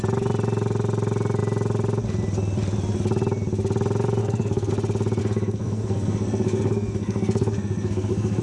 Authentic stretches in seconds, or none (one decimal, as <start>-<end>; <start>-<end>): 0.0-4.2; 4.7-5.2

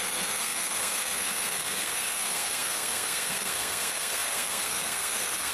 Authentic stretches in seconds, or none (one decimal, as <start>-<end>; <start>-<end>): none